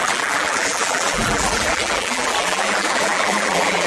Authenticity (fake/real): fake